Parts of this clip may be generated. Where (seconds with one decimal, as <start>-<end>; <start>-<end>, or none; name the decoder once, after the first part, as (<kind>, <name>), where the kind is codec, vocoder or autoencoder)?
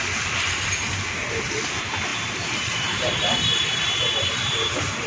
0.0-5.1 (vocoder, BigVGAN v2)